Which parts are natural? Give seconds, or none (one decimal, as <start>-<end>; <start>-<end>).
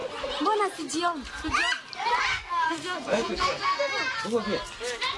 0.0-2.3; 3.8-5.2